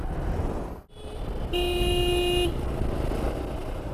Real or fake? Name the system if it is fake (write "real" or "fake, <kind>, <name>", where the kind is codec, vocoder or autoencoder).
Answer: real